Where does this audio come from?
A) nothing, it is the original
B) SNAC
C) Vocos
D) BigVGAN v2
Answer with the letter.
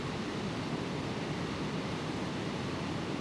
A